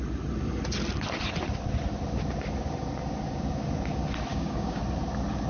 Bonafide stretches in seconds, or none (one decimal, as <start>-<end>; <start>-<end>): 0.0-4.3; 4.8-5.5